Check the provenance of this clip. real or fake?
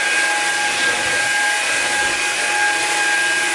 real